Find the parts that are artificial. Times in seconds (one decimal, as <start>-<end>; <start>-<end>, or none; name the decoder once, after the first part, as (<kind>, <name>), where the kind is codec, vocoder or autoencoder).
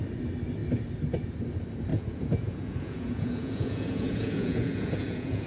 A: 1.9-5.5 (vocoder, Vocos)